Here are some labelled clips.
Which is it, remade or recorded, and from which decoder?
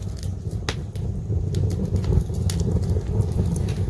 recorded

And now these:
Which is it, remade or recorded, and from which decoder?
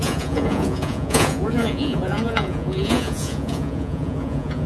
remade, vocoder, Vocos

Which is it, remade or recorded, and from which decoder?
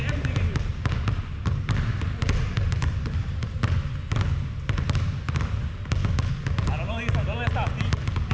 recorded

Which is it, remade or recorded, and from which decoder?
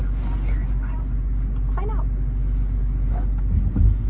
recorded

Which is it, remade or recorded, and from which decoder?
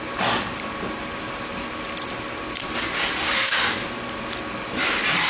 recorded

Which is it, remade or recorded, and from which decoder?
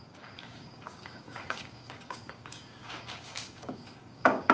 remade, codec, DAC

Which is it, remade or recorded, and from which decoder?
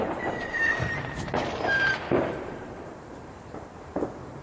remade, vocoder, BigVGAN v2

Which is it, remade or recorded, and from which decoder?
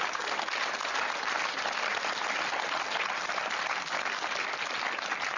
recorded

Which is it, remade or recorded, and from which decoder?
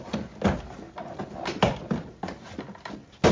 recorded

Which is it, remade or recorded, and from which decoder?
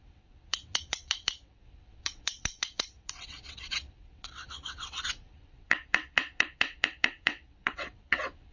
remade, vocoder, WaveNeXt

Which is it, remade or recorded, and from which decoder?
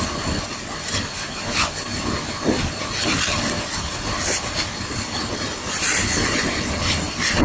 recorded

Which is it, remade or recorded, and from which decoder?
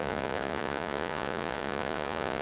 remade, vocoder, Vocos